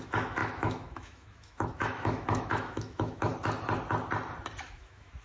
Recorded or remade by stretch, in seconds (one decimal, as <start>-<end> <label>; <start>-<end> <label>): 0.0-3.3 remade; 3.3-4.6 recorded; 4.6-5.2 remade